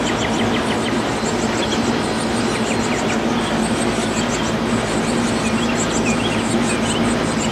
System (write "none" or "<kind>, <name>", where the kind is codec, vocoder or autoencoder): none